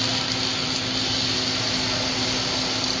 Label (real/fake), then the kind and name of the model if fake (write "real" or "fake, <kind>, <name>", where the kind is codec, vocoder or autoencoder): real